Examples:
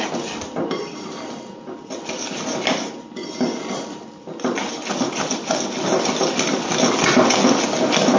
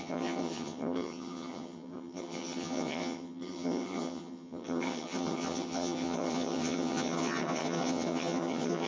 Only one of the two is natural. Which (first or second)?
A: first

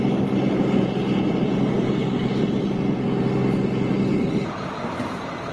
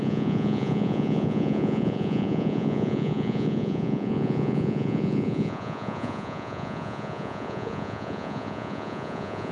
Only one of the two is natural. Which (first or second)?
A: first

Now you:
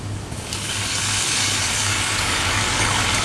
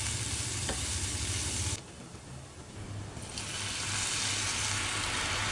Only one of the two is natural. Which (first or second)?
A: second